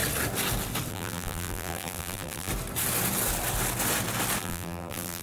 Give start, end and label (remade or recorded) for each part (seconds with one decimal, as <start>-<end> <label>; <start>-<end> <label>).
0.0-0.9 recorded; 0.9-2.5 remade; 2.5-4.4 recorded; 4.4-5.2 remade